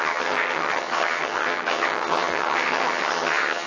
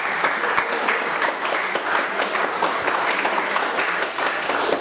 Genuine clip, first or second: second